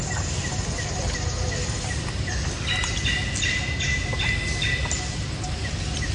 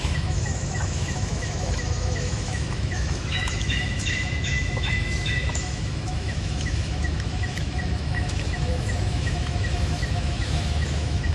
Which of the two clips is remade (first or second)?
second